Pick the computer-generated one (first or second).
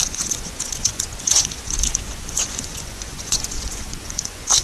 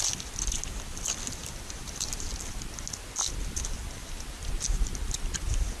first